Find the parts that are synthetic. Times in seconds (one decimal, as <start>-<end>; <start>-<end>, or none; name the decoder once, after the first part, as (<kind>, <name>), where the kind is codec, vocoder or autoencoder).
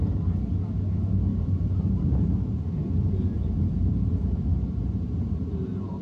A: 1.3-3.9 (vocoder, BigVGAN v2); 4.5-6.0